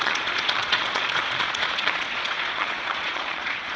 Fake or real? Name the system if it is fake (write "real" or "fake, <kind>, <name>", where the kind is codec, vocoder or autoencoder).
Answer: fake, vocoder, Vocos